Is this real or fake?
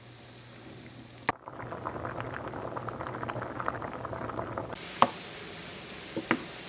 real